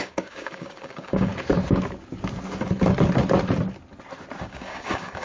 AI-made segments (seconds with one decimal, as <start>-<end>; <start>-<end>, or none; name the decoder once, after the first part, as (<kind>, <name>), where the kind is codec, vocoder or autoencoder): 0.0-1.3 (codec, DAC); 4.4-5.2